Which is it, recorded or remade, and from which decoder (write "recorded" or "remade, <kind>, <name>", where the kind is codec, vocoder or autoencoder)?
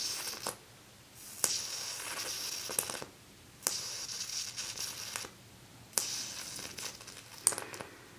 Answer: recorded